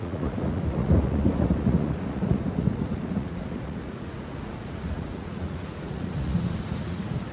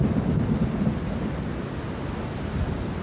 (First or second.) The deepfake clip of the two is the first